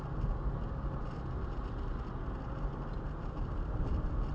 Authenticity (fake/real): real